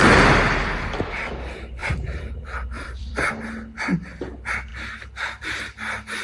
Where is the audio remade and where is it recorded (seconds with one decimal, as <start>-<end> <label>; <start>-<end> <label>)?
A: 0.0-1.8 recorded; 1.8-3.3 remade; 3.3-4.7 recorded; 4.7-6.2 remade